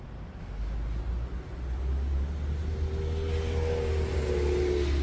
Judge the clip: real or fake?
real